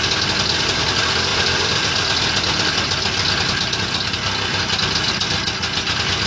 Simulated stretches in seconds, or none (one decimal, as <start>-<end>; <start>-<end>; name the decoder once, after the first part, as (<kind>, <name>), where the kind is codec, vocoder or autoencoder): none